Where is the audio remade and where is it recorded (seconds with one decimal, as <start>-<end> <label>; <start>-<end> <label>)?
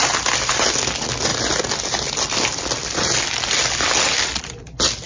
0.0-5.1 recorded